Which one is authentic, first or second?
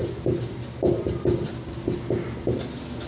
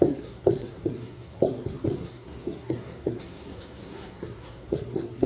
first